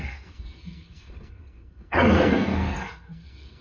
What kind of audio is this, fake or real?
fake